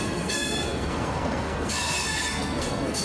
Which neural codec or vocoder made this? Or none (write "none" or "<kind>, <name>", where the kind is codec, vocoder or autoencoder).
codec, SNAC